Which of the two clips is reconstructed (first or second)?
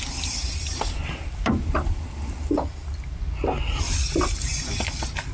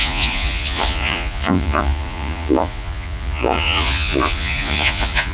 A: second